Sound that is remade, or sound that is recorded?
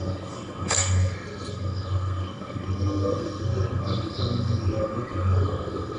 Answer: remade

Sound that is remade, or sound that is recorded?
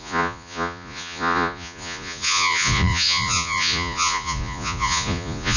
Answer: remade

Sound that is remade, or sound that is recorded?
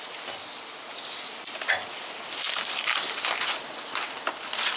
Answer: recorded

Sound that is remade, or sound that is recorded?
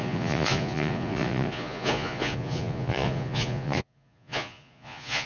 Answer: remade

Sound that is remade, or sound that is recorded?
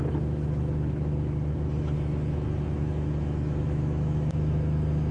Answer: remade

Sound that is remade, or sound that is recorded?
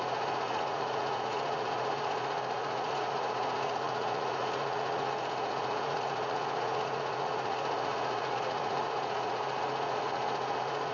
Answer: remade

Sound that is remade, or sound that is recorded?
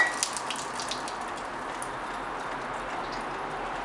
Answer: recorded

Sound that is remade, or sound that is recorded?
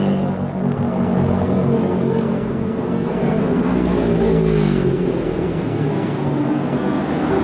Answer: remade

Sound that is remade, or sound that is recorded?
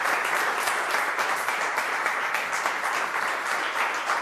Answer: remade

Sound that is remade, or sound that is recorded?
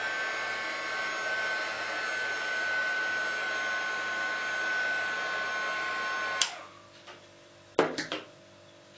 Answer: recorded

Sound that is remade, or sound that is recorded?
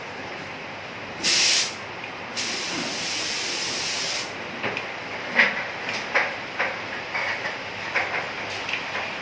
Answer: recorded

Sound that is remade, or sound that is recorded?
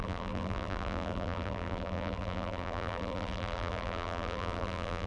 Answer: remade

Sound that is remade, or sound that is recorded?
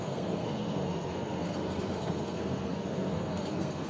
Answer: remade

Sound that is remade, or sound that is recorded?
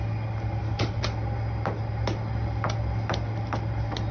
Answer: recorded